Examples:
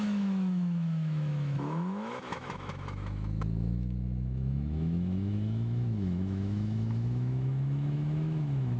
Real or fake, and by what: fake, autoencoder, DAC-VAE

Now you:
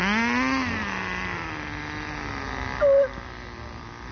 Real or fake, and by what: real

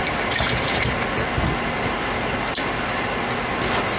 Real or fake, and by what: real